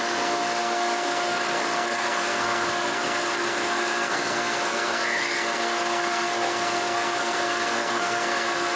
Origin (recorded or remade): remade